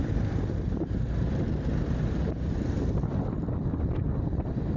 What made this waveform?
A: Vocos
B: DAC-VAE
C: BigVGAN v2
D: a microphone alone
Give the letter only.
C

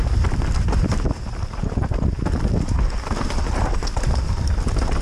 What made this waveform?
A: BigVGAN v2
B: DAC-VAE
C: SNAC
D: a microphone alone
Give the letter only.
A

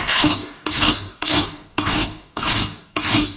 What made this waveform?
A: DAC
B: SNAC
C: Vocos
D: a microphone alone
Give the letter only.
A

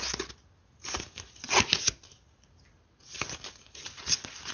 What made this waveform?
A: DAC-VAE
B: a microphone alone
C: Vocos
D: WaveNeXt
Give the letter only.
B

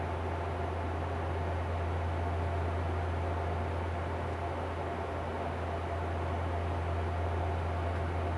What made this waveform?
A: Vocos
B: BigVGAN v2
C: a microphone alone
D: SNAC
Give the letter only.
C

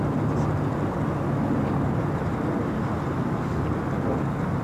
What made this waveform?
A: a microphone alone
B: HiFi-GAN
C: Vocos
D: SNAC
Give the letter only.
A